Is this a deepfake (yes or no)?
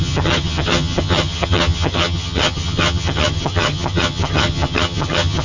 yes